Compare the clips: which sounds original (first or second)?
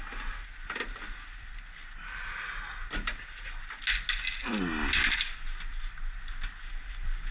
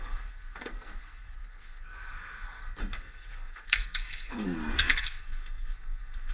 first